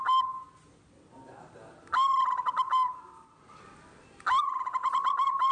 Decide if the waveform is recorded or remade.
recorded